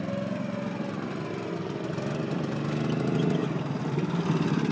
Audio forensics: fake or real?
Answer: real